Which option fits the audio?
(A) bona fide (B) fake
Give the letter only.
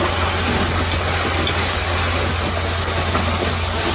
A